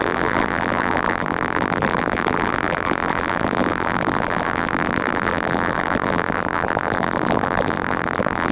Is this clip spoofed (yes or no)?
yes